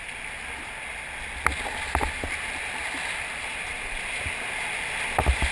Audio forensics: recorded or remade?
recorded